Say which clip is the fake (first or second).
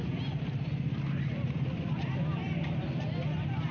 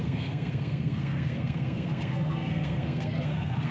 second